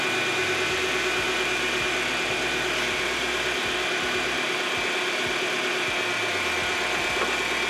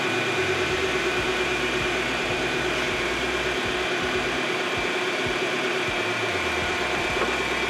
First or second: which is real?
first